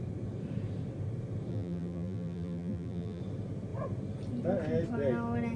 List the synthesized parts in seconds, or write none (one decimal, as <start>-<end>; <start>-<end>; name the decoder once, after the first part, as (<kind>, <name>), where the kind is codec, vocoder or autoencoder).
1.5-3.2 (vocoder, BigVGAN v2)